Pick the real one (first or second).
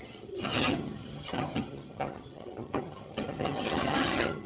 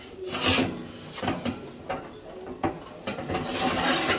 second